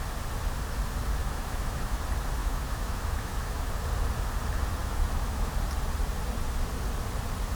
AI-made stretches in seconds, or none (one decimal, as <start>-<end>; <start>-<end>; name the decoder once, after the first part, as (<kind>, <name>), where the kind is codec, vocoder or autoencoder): 1.2-2.0 (autoencoder, DAC-VAE); 2.4-3.7; 4.8-5.5